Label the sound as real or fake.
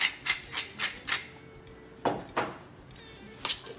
real